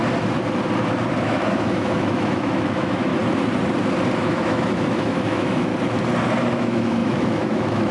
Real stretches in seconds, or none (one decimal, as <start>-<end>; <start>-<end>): 0.0-1.2; 3.1-4.2; 5.7-6.5